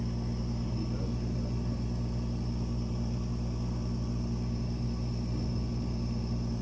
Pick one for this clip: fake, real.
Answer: real